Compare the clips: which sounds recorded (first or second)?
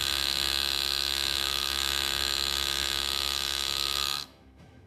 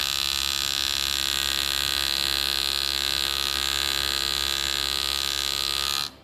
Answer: second